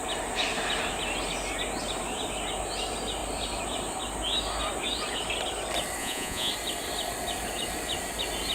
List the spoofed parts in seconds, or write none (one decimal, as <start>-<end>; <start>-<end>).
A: 6.0-6.5